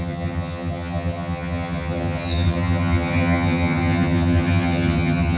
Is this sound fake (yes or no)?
yes